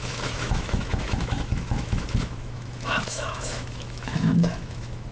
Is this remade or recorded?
remade